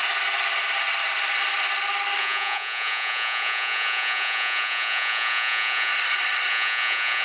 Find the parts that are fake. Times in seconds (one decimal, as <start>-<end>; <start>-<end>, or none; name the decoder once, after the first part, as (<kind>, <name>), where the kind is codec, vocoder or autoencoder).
2.2-5.9 (vocoder, Vocos); 6.5-7.2